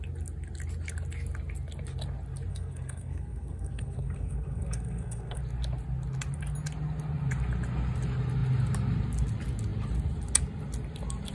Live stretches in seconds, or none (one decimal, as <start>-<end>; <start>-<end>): 0.0-2.5; 5.4-11.3